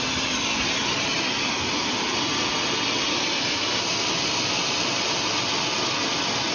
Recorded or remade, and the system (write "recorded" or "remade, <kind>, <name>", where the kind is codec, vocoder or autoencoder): recorded